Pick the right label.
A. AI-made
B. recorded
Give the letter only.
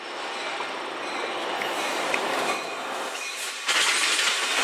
B